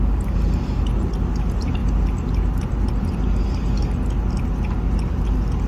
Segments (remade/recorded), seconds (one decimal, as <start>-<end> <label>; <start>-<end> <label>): 0.0-5.7 recorded

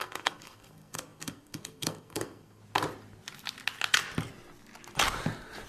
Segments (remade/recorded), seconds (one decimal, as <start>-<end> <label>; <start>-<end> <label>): 0.0-2.6 remade; 2.6-5.7 recorded

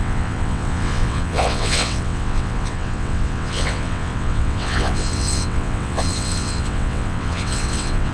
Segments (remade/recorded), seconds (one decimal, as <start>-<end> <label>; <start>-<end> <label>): 0.0-8.1 remade